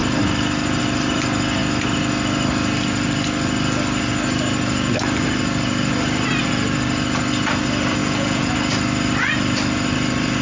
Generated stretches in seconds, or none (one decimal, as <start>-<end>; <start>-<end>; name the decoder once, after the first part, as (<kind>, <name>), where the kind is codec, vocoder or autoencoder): 8.0-8.5 (vocoder, Vocos)